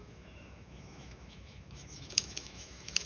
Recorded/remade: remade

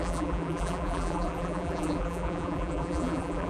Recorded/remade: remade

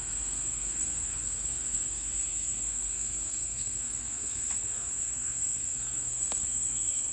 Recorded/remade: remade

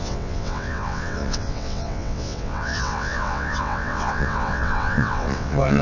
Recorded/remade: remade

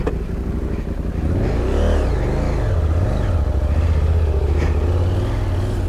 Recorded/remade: recorded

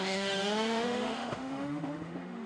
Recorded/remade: remade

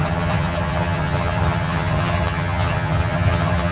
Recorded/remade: remade